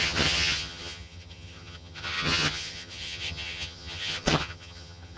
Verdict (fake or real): fake